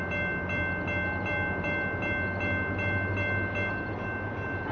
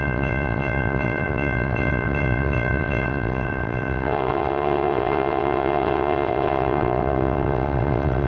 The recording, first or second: first